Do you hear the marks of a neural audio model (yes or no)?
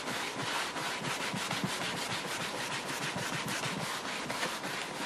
no